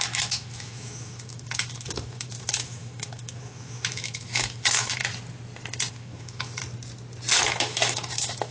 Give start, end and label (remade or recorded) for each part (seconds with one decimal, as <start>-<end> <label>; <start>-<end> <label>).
0.0-5.0 remade; 5.0-5.9 recorded; 5.9-6.6 remade; 6.6-7.4 recorded; 7.4-8.5 remade